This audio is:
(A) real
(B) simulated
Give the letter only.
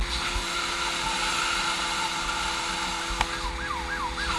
A